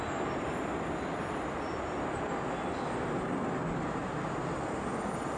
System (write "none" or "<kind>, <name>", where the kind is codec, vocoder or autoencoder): none